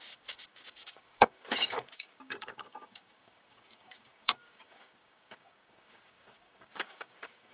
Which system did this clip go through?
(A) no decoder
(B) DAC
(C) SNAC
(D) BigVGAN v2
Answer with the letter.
B